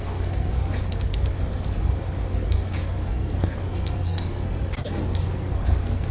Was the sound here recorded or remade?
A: remade